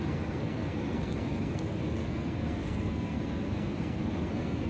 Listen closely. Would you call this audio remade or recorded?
remade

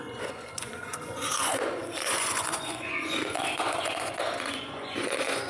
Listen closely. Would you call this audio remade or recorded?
remade